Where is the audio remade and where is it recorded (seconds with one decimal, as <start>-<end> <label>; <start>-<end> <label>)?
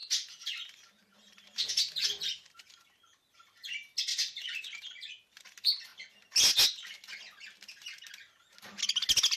0.0-1.7 remade; 1.7-4.1 recorded; 4.1-4.8 remade; 4.8-9.4 recorded